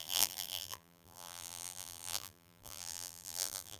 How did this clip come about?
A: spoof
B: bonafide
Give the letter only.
A